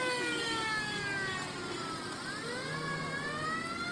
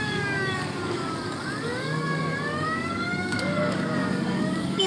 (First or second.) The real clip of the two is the first